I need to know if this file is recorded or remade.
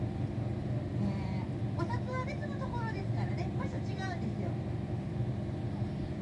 remade